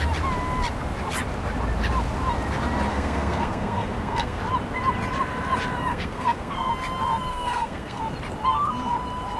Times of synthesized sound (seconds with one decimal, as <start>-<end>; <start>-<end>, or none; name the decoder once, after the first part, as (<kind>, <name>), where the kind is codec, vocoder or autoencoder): 2.9-4.4 (codec, SNAC); 5.9-6.7; 7.3-8.0